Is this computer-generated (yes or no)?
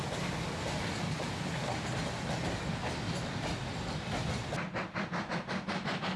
no